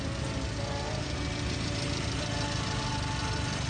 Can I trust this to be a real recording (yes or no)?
yes